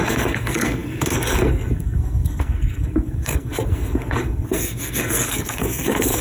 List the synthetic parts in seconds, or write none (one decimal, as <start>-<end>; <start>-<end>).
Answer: 0.0-6.2

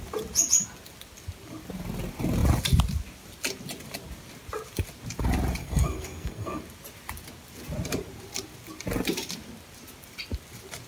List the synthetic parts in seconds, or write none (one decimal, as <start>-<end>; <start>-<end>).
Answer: 5.6-6.6